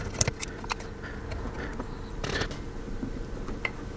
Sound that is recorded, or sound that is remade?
recorded